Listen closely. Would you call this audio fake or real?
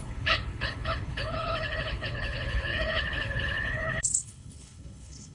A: fake